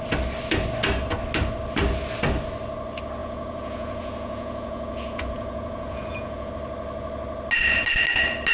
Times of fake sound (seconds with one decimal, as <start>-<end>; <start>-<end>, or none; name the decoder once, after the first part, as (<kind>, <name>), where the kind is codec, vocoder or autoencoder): 3.2-6.5 (vocoder, Vocos)